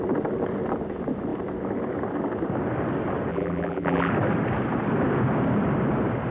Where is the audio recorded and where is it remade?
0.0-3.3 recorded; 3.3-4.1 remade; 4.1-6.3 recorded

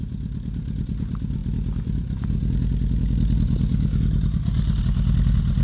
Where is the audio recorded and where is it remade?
0.0-5.6 recorded

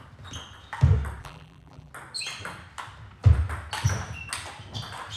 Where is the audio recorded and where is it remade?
0.0-1.2 recorded; 1.2-1.9 remade; 1.9-5.2 recorded

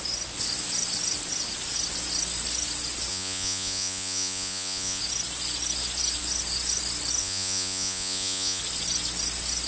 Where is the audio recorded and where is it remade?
0.0-3.1 recorded; 3.1-5.0 remade; 5.0-7.2 recorded; 7.2-8.6 remade; 8.6-9.7 recorded

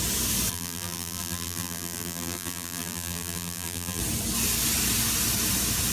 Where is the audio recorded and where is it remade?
0.0-0.5 recorded; 0.5-4.0 remade; 4.0-5.9 recorded

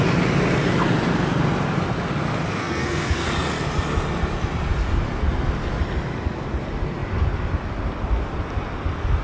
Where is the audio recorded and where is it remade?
0.0-2.6 recorded; 2.6-3.3 remade; 3.3-9.2 recorded